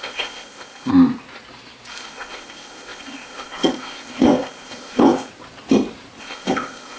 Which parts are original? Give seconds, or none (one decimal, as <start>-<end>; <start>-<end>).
0.9-1.9; 5.3-6.2